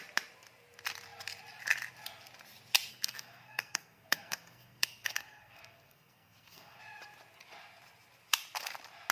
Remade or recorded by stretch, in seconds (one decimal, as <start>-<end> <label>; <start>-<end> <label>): 0.0-2.9 recorded; 2.9-6.8 remade; 6.8-9.1 recorded